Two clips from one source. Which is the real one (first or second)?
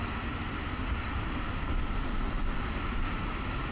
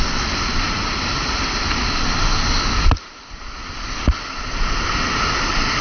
first